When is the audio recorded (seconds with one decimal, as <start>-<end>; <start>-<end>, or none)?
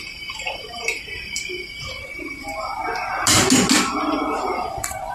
2.8-4.4